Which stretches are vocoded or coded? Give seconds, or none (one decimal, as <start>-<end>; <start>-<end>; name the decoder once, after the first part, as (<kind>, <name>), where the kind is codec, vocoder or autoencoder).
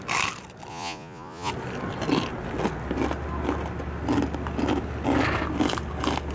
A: 0.7-1.5 (vocoder, Vocos)